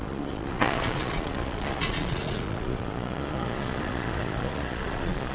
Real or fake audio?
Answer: fake